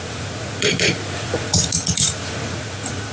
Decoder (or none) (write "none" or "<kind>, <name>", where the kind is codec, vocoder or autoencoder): vocoder, Vocos